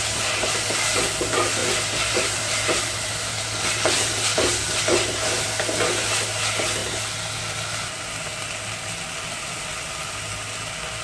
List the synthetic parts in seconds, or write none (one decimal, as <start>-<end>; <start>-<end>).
none